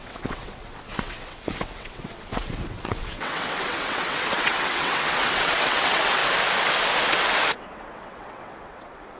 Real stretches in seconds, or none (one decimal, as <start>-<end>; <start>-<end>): 6.2-7.6